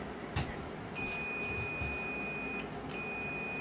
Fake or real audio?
real